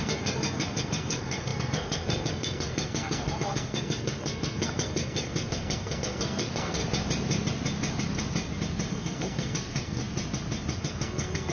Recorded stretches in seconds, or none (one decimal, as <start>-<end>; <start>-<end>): 6.8-8.9; 10.0-10.8